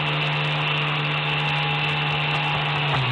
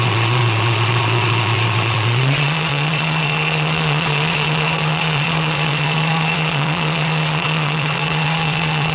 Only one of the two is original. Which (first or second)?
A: first